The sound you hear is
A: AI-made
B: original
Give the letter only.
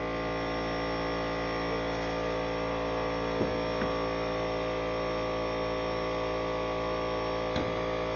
B